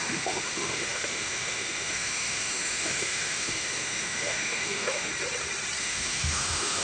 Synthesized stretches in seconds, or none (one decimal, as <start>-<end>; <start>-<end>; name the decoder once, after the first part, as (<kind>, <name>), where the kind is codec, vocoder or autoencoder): 0.0-5.1 (autoencoder, DAC-VAE); 5.8-6.8